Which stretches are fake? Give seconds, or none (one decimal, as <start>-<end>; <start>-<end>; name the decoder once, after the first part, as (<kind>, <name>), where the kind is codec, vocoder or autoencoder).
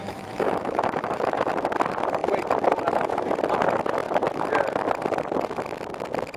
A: 0.0-1.5 (autoencoder, DAC-VAE)